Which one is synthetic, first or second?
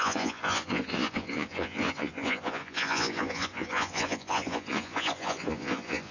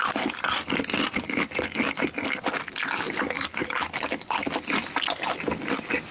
first